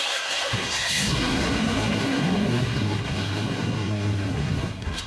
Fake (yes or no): yes